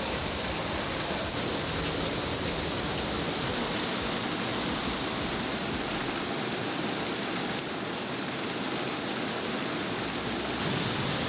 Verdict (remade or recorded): recorded